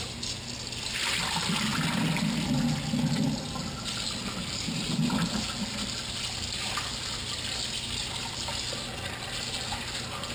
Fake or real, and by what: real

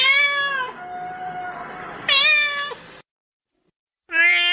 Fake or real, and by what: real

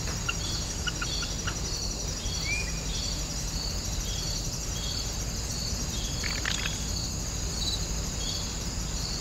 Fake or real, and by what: real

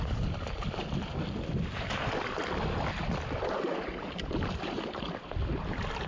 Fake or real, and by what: real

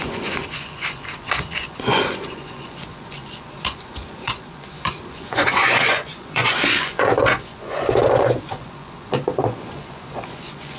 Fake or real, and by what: fake, vocoder, Vocos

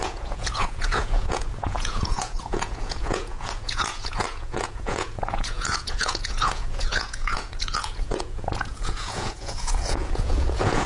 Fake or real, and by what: fake, vocoder, Vocos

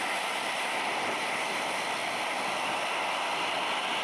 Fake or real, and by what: real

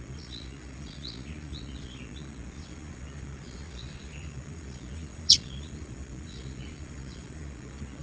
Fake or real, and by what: fake, vocoder, Vocos